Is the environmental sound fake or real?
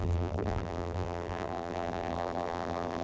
fake